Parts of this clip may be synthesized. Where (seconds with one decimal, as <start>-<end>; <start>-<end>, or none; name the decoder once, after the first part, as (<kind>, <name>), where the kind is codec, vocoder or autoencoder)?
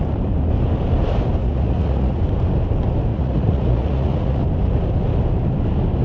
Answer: 1.4-2.2 (vocoder, Vocos); 3.1-4.4